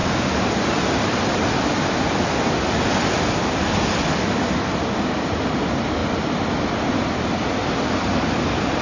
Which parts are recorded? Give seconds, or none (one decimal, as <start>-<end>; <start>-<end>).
0.0-8.8